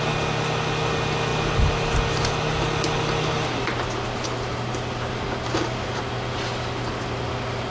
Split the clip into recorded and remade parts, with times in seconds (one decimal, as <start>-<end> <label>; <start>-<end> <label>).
0.0-7.7 recorded